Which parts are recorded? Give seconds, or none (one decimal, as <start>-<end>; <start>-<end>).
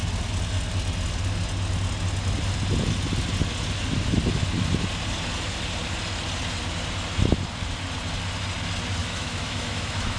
0.0-9.0